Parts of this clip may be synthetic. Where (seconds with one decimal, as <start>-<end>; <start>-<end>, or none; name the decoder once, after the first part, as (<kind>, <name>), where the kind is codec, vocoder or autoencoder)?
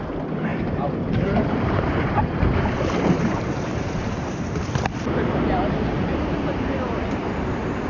0.5-4.5 (vocoder, BigVGAN v2)